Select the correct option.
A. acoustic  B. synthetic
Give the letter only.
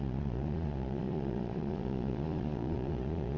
B